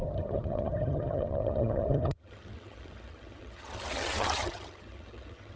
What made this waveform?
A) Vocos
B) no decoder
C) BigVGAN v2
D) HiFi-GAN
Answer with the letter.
D